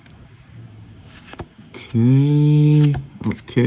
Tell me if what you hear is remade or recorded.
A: remade